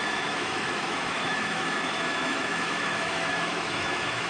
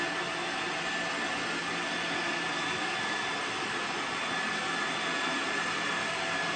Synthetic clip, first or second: first